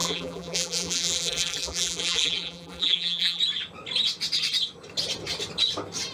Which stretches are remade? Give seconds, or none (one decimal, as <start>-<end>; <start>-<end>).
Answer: 0.0-3.4